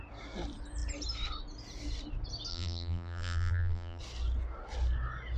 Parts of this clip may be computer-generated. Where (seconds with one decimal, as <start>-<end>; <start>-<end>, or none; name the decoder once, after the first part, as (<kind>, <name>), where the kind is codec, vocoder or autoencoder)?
2.5-4.0 (vocoder, BigVGAN v2)